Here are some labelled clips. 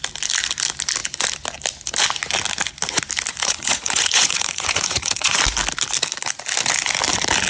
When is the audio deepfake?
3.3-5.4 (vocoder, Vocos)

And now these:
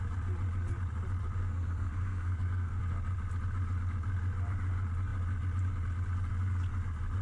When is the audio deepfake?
1.4-2.8 (codec, SNAC)